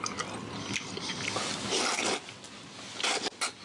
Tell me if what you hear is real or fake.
real